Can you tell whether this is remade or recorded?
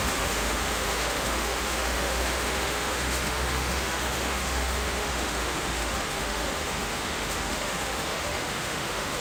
remade